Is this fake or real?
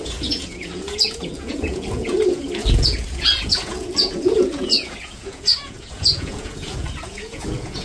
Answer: fake